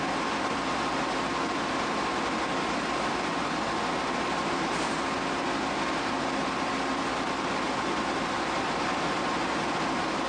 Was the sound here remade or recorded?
recorded